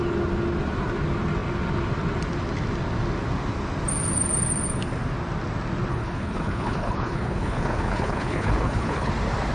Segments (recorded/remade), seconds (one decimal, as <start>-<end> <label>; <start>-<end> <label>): 0.0-5.9 recorded; 5.9-9.1 remade; 9.1-9.5 recorded